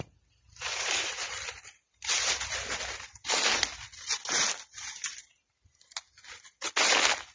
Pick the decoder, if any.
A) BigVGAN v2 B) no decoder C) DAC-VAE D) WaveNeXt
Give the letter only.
B